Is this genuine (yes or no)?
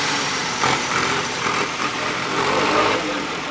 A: no